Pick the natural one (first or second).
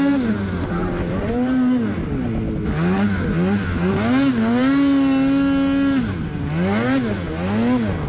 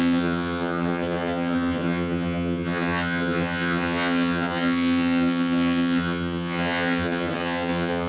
first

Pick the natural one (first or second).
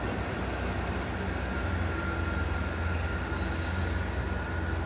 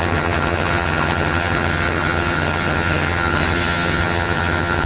first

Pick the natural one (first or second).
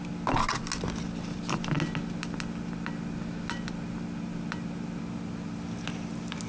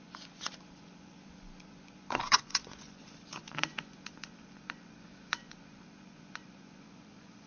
first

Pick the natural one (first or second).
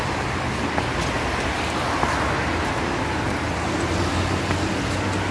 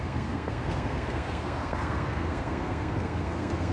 first